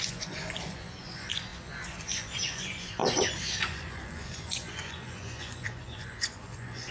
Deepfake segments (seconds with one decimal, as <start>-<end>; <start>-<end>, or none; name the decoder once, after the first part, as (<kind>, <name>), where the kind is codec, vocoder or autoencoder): 0.0-6.9 (vocoder, Vocos)